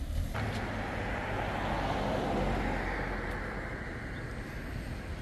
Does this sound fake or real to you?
real